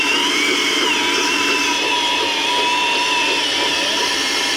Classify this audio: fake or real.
real